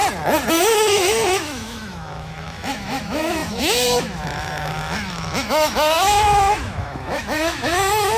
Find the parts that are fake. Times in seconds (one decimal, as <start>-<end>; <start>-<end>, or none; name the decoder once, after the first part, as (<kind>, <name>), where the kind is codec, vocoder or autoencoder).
0.5-8.2 (autoencoder, DAC-VAE)